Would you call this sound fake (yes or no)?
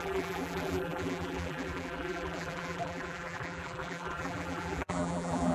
yes